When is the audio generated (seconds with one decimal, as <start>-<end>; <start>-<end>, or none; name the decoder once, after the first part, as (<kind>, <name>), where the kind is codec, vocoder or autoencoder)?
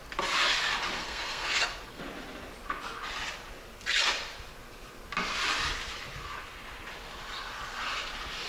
1.0-2.0 (codec, SNAC)